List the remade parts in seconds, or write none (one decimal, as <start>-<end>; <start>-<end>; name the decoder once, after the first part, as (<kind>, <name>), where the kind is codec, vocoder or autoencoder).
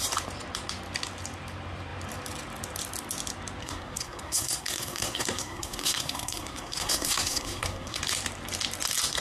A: 3.6-8.0 (codec, SNAC)